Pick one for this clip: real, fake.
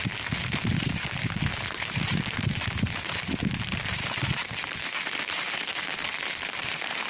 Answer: fake